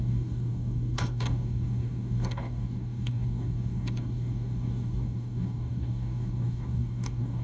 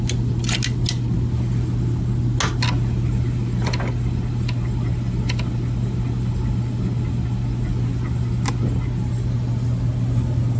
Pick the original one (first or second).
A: second